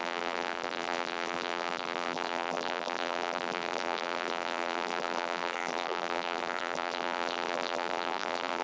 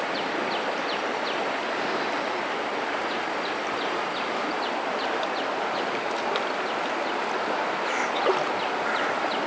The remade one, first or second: first